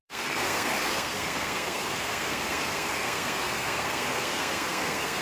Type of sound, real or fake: fake